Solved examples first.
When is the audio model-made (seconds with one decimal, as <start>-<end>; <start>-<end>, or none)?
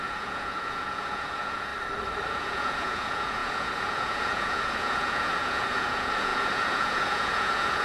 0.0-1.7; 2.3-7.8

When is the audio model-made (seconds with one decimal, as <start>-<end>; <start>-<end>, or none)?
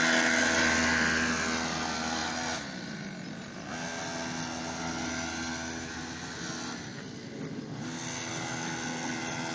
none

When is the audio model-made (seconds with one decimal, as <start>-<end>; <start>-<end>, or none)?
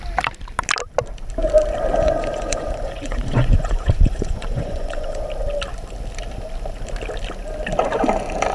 1.9-5.2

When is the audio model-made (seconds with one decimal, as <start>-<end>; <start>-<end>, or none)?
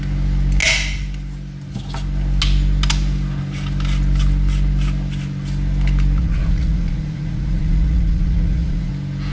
6.2-8.9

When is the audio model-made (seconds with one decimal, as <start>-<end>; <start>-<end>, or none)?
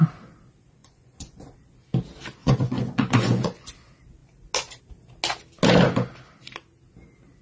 0.8-1.5; 2.4-3.7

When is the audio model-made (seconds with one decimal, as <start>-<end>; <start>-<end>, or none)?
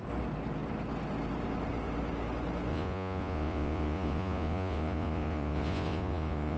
2.7-6.6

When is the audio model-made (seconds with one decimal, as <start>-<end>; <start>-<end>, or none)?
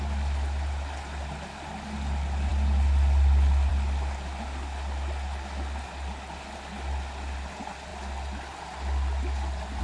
none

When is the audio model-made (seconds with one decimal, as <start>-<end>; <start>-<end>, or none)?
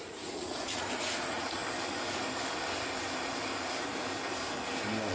0.0-1.6